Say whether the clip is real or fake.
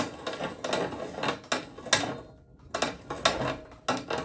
real